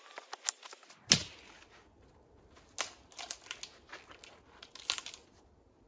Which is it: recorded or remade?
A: recorded